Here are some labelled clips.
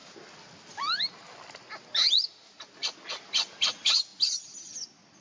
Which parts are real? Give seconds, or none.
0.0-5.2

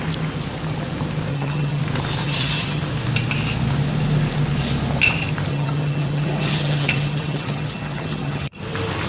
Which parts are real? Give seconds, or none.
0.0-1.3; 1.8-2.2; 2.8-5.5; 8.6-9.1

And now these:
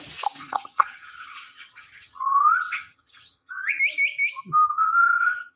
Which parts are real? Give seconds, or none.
0.0-0.4; 3.8-4.7

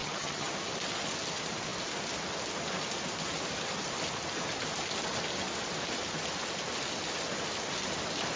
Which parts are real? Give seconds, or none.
0.5-8.4

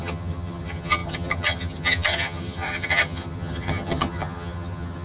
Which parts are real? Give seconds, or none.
none

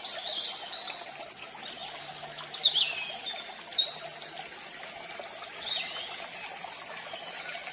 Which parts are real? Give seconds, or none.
0.0-7.7